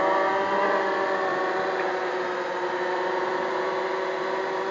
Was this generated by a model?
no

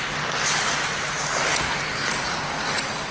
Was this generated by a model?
no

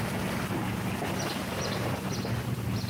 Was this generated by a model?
no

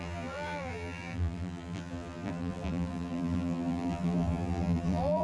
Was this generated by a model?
yes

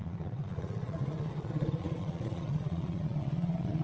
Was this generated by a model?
yes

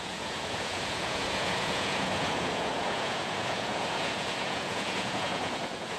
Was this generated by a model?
yes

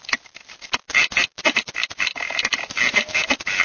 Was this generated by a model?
no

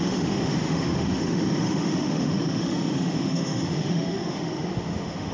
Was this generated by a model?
yes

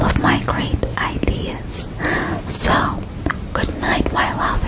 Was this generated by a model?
no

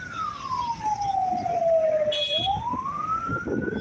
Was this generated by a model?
no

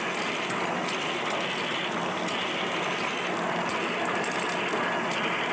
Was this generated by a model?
no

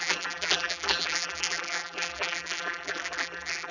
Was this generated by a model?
yes